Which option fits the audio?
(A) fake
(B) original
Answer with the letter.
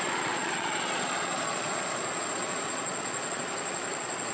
A